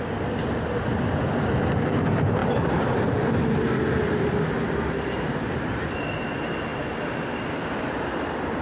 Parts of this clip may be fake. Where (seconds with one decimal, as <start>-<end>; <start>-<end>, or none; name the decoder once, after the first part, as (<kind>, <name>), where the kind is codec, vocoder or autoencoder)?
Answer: 2.4-5.6 (vocoder, BigVGAN v2)